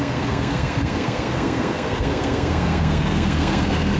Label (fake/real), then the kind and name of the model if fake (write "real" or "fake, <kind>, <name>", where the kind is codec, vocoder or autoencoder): fake, codec, SNAC